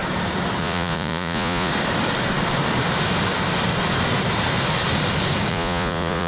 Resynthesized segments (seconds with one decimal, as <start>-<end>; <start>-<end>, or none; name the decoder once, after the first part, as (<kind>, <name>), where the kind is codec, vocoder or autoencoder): 0.6-1.7 (vocoder, Vocos); 5.5-6.3

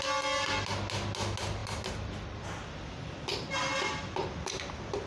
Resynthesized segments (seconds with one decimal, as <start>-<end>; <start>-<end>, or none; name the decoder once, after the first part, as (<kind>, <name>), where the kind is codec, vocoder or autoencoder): none